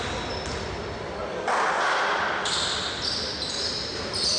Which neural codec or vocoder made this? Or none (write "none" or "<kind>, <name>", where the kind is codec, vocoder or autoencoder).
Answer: none